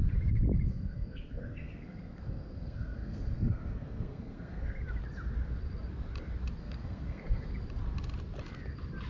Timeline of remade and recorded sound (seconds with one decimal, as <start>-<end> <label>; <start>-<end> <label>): 0.0-0.7 recorded; 0.7-4.8 remade; 4.8-6.6 recorded; 6.6-7.5 remade; 7.5-9.1 recorded